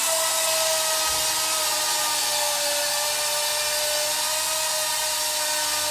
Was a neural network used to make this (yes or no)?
no